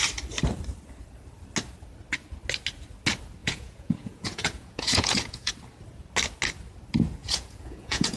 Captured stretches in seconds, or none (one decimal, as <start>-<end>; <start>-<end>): 0.0-3.4; 5.5-7.2